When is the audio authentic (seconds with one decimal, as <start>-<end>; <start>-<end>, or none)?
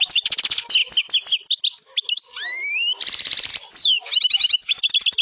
0.0-5.2